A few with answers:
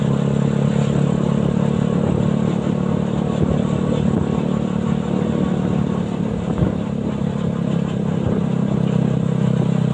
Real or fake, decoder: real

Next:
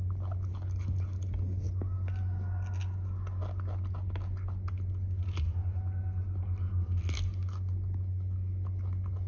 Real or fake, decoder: real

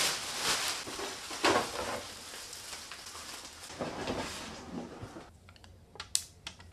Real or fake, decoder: real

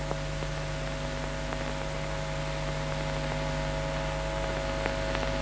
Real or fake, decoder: real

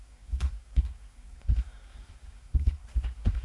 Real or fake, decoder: fake, codec, SNAC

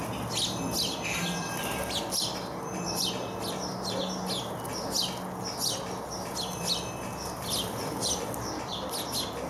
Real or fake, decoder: real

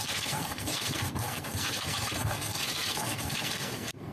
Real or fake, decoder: fake, codec, SNAC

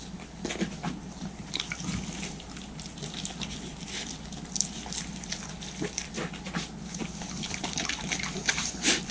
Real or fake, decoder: real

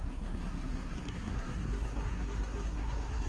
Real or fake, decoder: fake, codec, SNAC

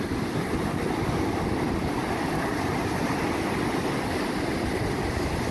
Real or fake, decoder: real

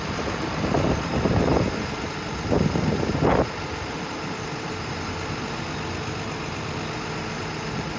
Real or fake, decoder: real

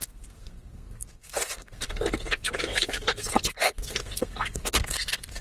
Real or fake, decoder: fake, codec, SNAC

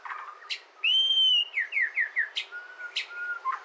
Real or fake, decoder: real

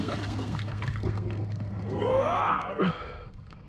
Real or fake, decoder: fake, codec, SNAC